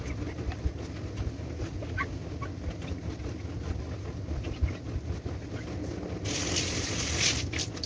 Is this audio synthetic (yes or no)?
no